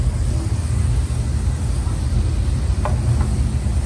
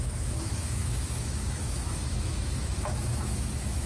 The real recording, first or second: first